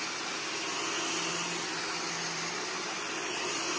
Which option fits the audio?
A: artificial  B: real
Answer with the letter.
B